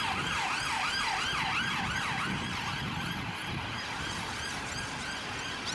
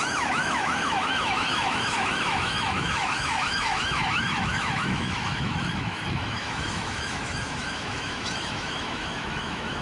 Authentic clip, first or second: first